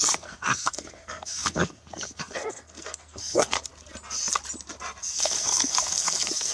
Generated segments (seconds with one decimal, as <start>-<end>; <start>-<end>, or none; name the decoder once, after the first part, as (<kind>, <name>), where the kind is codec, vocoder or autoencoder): 0.0-3.7 (codec, SNAC); 5.0-6.5